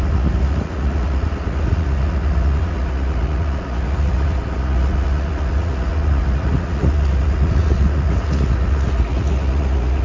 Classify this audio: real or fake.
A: fake